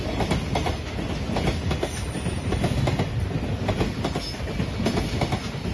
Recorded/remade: recorded